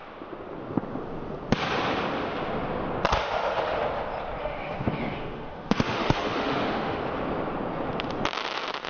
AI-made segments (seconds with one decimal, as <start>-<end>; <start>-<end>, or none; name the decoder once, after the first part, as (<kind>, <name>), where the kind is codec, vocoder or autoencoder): 3.2-3.8 (autoencoder, DAC-VAE); 4.4-7.0